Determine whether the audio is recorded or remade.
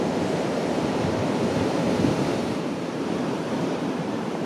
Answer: remade